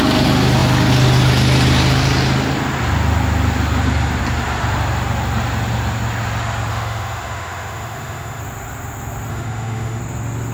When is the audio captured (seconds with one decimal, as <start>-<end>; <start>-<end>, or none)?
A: 0.0-6.7; 8.4-9.3; 10.0-10.5